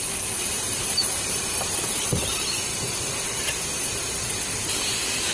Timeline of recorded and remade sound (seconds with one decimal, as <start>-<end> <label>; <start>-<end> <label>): 0.0-5.3 remade